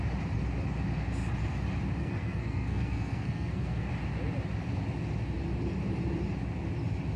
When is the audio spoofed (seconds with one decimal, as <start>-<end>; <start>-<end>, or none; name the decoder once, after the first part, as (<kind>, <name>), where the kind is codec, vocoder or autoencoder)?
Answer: 2.0-3.9 (codec, SNAC)